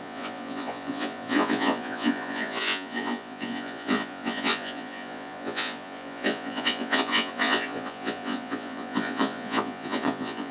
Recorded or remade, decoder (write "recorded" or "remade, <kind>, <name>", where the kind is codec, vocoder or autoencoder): remade, vocoder, Vocos